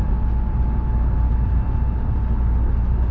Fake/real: real